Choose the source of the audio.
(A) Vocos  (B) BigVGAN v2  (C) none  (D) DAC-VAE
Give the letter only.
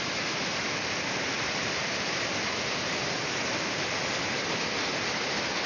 C